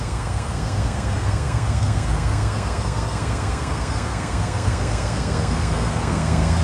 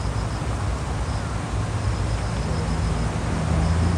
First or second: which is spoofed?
first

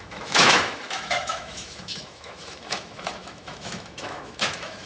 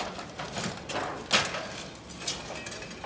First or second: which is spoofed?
first